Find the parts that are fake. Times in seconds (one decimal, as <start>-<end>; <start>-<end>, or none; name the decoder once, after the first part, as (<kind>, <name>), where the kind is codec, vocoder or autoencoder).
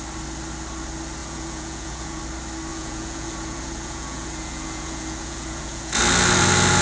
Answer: 1.2-2.2 (vocoder, Vocos); 2.7-6.0